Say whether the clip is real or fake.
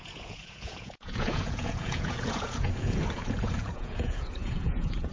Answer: fake